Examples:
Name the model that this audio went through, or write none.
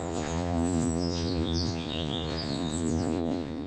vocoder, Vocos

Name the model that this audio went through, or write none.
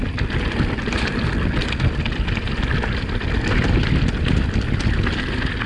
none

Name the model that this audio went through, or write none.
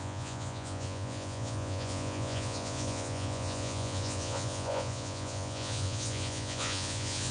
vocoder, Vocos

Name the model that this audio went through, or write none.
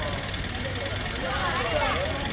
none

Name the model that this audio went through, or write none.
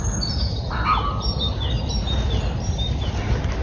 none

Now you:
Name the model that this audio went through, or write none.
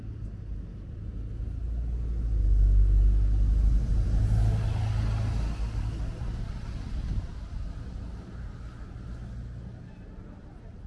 none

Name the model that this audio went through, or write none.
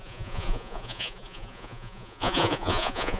vocoder, Vocos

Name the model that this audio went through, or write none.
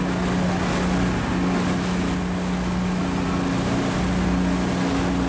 none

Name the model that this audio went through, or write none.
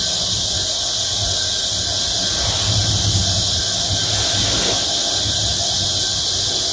none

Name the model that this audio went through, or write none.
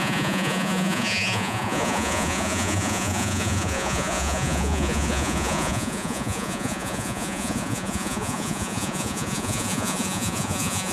vocoder, Vocos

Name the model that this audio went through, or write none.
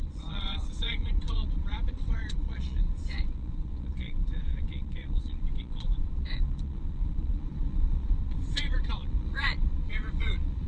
vocoder, Vocos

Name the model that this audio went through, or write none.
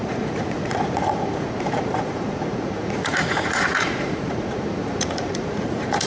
vocoder, Vocos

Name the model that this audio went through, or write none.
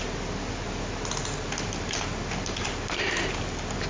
none